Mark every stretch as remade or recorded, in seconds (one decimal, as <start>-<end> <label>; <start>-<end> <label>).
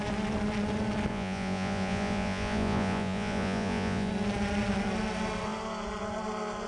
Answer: 0.0-1.1 recorded; 1.1-4.1 remade; 4.1-6.7 recorded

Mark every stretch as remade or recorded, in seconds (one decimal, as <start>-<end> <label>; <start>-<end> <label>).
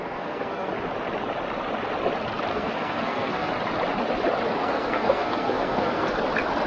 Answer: 0.0-0.7 remade; 0.7-2.5 recorded; 2.5-3.5 remade; 3.5-4.6 recorded; 4.6-6.1 remade; 6.1-6.7 recorded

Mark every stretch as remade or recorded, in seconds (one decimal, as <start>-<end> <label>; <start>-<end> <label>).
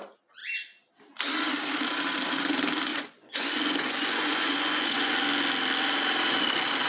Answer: 0.0-2.9 recorded; 2.9-5.1 remade; 5.1-6.9 recorded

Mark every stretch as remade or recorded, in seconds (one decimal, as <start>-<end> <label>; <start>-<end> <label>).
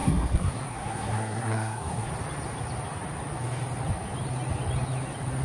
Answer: 0.0-2.1 remade; 2.1-5.4 recorded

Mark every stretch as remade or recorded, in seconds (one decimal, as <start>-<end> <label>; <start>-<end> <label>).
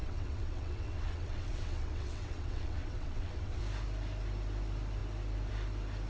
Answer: 0.0-3.6 remade; 3.6-6.1 recorded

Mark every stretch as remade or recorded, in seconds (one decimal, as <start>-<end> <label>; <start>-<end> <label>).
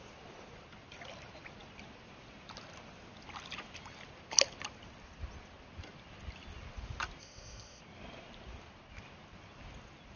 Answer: 0.0-7.2 recorded; 7.2-7.8 remade; 7.8-10.2 recorded